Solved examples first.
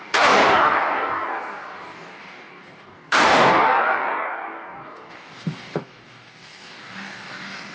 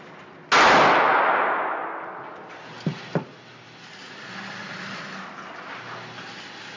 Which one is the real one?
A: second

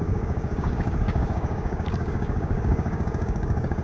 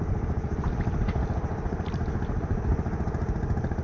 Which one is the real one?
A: second